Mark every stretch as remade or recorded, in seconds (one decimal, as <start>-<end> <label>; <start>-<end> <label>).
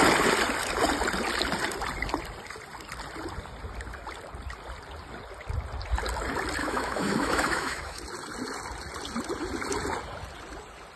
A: 0.0-6.6 recorded; 6.6-8.0 remade; 8.0-11.0 recorded